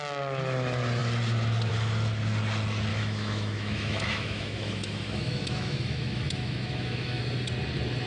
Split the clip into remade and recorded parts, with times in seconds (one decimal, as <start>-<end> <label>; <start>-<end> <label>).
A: 0.0-2.9 recorded; 2.9-7.2 remade; 7.2-8.1 recorded